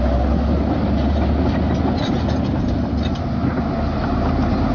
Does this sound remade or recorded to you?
recorded